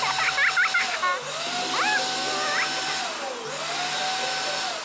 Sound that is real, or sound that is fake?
real